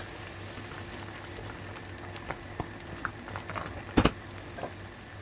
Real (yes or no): yes